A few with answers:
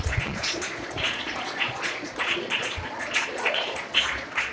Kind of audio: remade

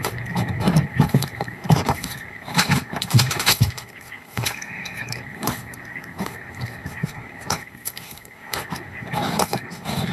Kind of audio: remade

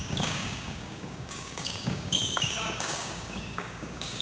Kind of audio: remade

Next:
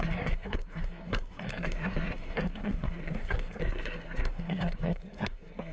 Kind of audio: remade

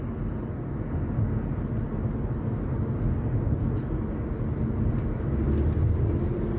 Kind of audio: recorded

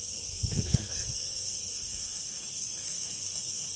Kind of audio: remade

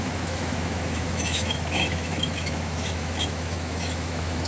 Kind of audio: remade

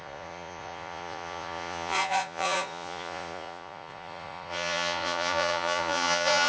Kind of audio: remade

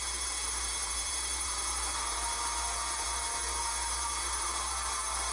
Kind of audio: remade